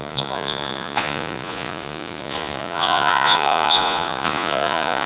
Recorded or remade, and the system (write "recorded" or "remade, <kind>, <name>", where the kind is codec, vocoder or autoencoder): remade, vocoder, Vocos